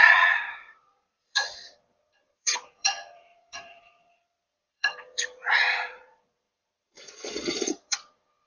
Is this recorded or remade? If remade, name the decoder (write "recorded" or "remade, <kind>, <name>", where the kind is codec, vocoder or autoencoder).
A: remade, vocoder, Vocos